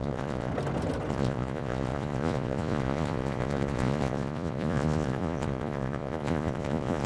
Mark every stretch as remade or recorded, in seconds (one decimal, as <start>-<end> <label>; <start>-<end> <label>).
0.0-0.5 remade; 0.5-1.1 recorded; 1.1-7.1 remade